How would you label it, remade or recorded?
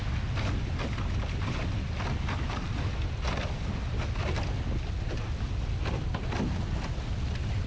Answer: recorded